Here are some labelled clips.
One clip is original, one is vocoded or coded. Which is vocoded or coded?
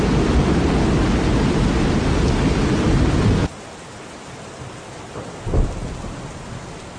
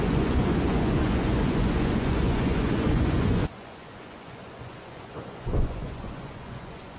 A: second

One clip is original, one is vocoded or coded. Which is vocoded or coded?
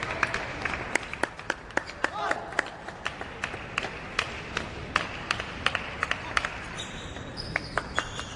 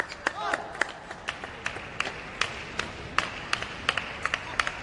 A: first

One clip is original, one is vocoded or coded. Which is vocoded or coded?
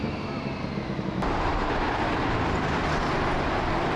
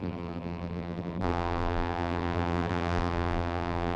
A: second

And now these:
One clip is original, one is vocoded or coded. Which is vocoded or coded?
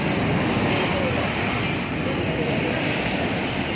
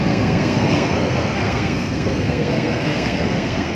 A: second